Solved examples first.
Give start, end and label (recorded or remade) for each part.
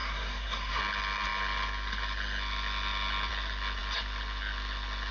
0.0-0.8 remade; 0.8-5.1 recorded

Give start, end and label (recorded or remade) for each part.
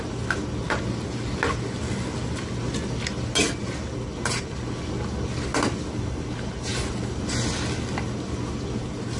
0.0-9.2 recorded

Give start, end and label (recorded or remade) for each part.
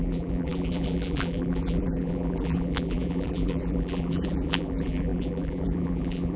0.0-6.4 remade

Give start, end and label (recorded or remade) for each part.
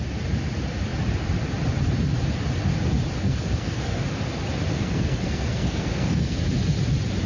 0.0-3.2 recorded; 3.2-4.0 remade; 4.0-4.7 recorded; 4.7-6.4 remade; 6.4-7.3 recorded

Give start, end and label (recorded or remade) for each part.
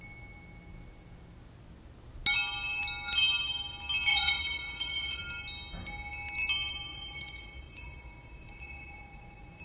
0.0-4.1 recorded; 4.1-5.2 remade; 5.2-6.9 recorded; 6.9-9.6 remade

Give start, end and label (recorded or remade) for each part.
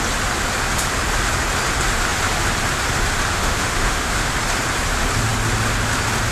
0.0-3.3 recorded; 3.3-4.3 remade; 4.3-6.3 recorded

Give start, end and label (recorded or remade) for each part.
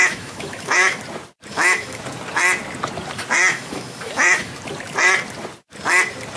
0.0-1.0 remade; 1.0-1.5 recorded; 1.5-2.0 remade; 2.0-3.5 recorded; 3.5-4.5 remade; 4.5-6.4 recorded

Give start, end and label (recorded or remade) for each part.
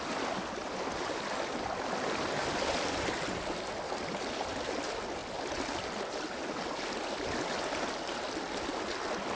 0.0-0.6 recorded; 0.6-3.7 remade; 3.7-9.4 recorded